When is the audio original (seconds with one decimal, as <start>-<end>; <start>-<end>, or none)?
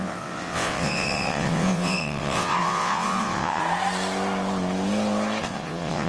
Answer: 3.6-5.4